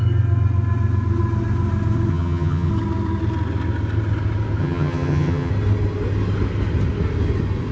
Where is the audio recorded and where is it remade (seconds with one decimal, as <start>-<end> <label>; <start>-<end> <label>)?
0.0-2.1 recorded; 2.1-2.7 remade; 2.7-4.6 recorded; 4.6-5.5 remade; 5.5-7.7 recorded